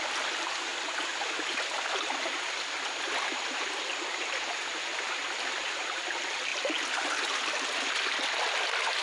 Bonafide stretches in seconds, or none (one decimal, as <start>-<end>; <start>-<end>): 0.0-9.0